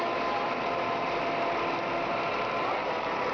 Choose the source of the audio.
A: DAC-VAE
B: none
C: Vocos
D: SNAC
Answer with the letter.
B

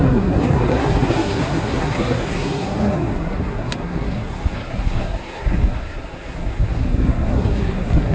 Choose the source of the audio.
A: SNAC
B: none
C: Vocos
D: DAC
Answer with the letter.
A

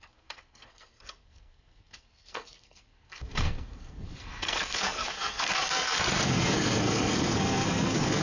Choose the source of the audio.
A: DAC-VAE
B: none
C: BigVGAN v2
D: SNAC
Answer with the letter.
D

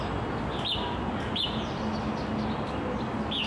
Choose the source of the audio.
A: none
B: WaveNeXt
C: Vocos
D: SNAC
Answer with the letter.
A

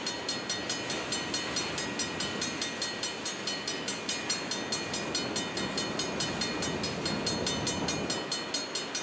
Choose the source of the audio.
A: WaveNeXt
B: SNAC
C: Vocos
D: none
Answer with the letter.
D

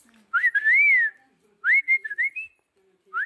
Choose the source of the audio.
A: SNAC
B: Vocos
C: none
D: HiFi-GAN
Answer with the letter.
C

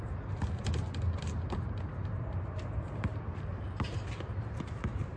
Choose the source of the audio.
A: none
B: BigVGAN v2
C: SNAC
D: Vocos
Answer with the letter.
A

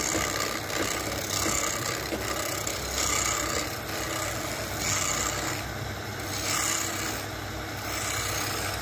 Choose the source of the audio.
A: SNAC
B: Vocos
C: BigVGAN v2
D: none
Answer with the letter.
D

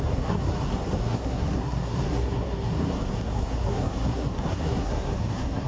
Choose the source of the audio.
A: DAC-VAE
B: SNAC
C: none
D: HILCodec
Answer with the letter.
B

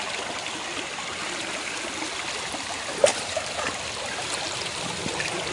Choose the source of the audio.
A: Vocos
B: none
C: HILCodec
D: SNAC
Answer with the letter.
B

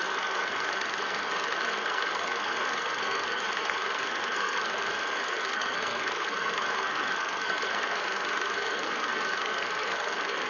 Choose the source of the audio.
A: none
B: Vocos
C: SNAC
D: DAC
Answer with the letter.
C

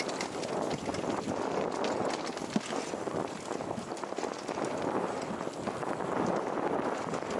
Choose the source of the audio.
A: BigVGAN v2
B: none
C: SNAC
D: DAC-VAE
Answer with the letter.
B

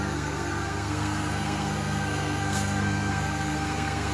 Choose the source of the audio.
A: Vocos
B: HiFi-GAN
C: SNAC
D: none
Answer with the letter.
C